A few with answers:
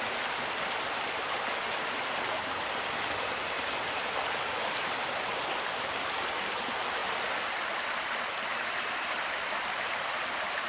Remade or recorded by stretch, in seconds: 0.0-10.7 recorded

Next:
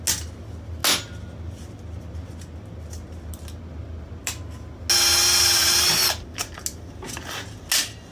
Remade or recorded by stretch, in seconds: 0.0-8.1 recorded

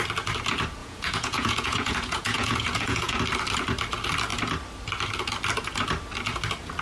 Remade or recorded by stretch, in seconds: 0.0-0.8 recorded; 0.8-3.2 remade; 3.2-6.8 recorded

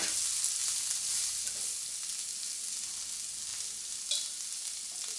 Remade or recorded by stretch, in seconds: 0.0-5.2 recorded

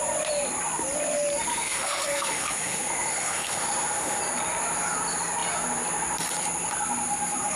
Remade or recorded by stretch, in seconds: 0.0-1.5 recorded; 1.5-4.2 remade; 4.2-7.6 recorded

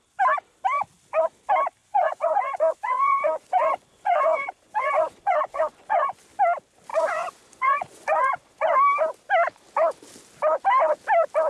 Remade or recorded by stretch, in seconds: 0.0-1.8 recorded; 1.8-6.2 remade; 6.2-6.9 recorded; 6.9-8.8 remade; 8.8-11.5 recorded

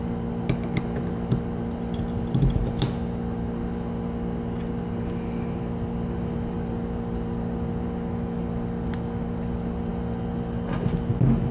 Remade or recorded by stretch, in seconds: 0.0-11.5 recorded